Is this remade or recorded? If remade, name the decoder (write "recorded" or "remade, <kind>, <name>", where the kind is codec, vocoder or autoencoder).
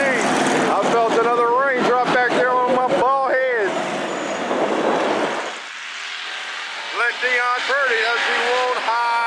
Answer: recorded